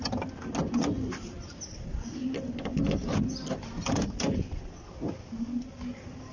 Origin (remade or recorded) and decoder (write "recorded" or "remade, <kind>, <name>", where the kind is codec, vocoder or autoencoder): recorded